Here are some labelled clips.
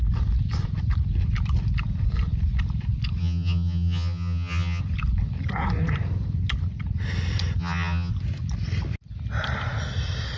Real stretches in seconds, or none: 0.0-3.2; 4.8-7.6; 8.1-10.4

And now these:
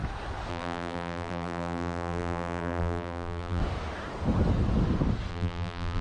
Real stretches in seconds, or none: 0.0-0.5; 3.6-5.3

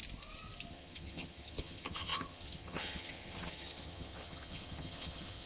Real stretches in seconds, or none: 0.0-0.7

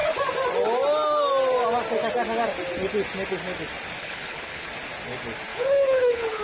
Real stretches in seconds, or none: 0.0-4.0; 4.7-5.5

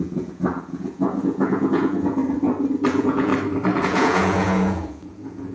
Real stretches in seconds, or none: 2.2-2.9; 3.3-3.8